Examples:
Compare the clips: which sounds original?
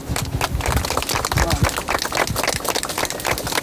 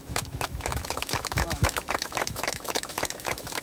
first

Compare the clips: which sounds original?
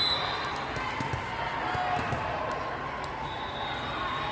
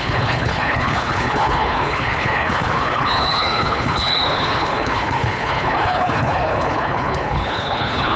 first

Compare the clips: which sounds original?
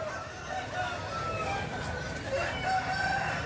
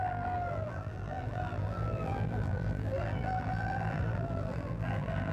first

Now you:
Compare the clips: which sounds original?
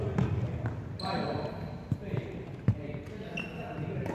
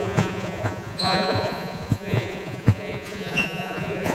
first